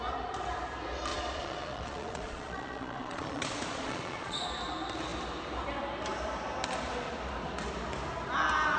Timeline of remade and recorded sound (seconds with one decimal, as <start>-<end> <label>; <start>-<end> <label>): 0.0-1.1 recorded; 1.1-4.5 remade; 4.5-8.8 recorded